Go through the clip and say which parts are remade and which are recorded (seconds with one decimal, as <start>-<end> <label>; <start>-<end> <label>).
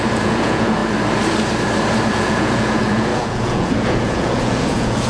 0.0-0.8 remade; 0.8-2.1 recorded; 2.1-5.1 remade